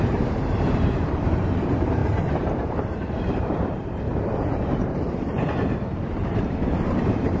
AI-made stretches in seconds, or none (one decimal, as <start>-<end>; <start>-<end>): 0.0-4.1; 4.9-7.4